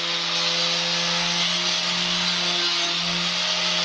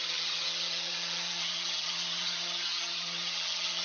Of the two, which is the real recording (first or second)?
first